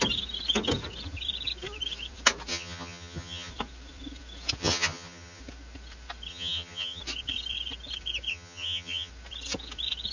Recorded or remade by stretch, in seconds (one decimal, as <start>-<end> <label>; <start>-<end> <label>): 0.0-2.5 recorded; 2.5-3.5 remade; 3.5-4.6 recorded; 4.6-5.4 remade; 5.4-6.3 recorded; 6.3-7.0 remade; 7.0-8.3 recorded; 8.3-9.1 remade; 9.1-10.1 recorded